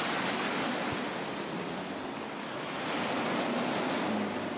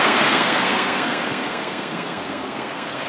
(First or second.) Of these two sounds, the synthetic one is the second